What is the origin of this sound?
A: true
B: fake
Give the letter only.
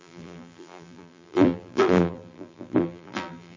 B